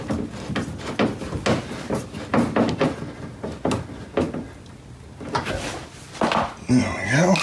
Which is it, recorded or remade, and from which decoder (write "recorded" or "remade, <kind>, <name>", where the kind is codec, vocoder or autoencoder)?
recorded